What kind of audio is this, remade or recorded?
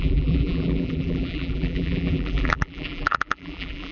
remade